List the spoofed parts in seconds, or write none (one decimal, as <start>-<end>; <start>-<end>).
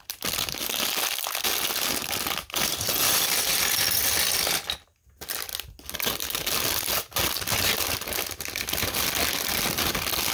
none